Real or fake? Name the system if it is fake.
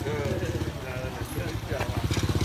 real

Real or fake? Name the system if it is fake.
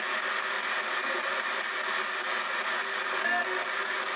real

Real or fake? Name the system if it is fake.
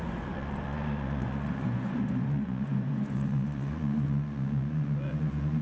fake, vocoder, Vocos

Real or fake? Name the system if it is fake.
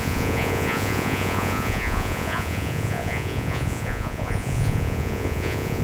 fake, vocoder, Vocos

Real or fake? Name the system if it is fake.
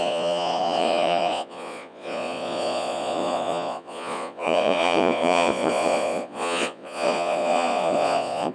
fake, vocoder, Vocos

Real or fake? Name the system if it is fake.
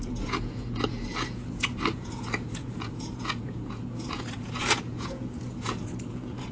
fake, vocoder, Vocos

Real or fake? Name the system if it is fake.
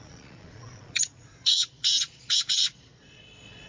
fake, vocoder, Vocos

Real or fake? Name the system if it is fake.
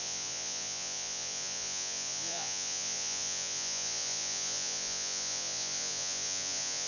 fake, vocoder, Vocos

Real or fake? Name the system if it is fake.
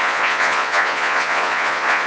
fake, vocoder, Vocos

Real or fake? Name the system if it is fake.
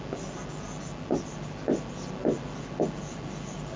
real